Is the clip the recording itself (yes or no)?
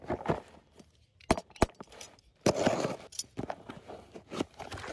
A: yes